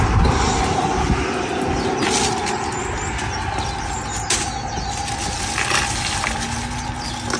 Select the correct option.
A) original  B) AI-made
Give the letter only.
A